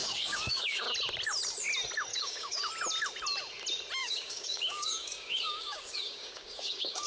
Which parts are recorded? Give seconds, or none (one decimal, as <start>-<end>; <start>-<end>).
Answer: 0.8-2.1; 2.7-4.0